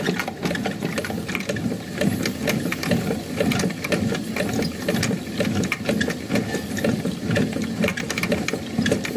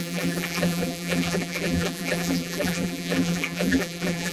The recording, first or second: first